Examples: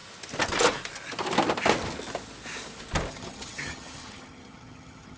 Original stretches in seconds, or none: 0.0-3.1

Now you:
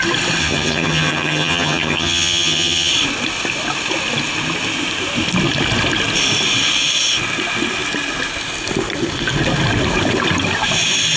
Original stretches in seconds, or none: 0.0-0.4; 2.9-11.2

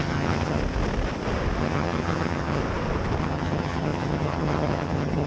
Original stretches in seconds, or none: 0.6-1.6; 2.6-3.2